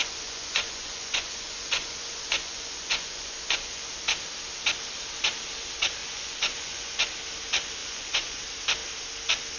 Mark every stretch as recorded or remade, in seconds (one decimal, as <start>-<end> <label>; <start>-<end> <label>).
0.0-3.9 remade; 3.9-6.0 recorded; 6.0-7.1 remade; 7.1-7.8 recorded; 7.8-8.4 remade; 8.4-9.6 recorded

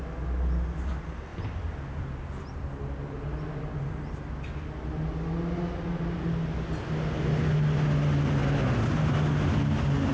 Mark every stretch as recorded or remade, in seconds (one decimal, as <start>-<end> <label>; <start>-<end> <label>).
0.0-10.1 recorded

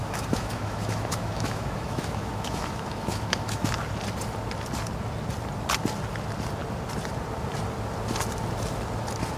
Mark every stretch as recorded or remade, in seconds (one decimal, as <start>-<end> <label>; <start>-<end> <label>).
0.0-3.8 remade; 3.8-9.4 recorded